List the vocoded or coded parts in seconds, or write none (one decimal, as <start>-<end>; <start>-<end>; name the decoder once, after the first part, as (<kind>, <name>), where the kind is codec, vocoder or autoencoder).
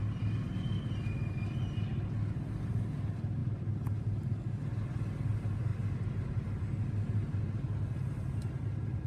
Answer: none